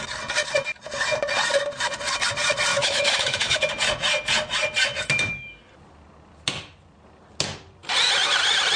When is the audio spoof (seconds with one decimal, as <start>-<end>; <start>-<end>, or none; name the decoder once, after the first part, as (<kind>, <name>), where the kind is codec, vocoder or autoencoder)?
2.7-3.7 (autoencoder, DAC-VAE)